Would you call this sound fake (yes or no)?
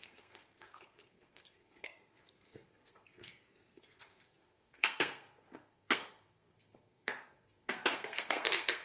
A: yes